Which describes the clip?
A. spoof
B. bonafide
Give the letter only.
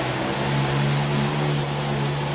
B